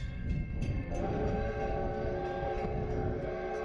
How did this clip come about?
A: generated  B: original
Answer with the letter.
A